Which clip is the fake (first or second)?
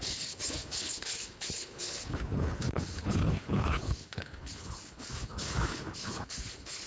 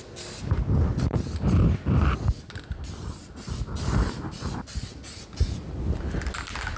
first